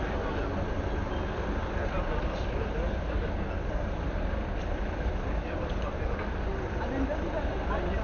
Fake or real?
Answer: real